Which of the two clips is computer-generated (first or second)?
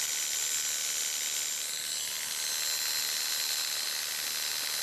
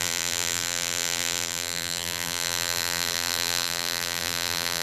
second